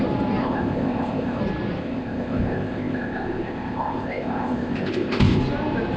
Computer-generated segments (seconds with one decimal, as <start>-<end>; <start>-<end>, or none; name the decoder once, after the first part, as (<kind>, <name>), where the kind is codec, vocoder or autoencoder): 0.4-1.4 (codec, ZipCodec); 1.8-5.4